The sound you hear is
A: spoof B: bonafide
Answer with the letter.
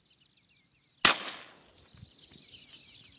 B